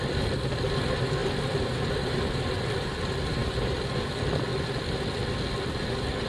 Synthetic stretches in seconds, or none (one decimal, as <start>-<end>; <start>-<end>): 0.0-4.5